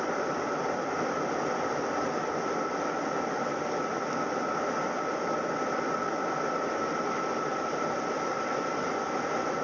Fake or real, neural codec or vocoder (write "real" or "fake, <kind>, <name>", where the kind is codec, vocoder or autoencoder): real